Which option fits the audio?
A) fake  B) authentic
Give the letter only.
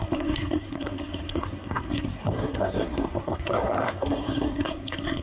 A